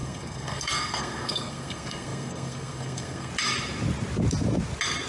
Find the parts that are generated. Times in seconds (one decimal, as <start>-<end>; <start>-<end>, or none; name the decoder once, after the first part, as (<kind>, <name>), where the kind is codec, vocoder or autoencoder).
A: 0.0-3.3 (codec, SNAC)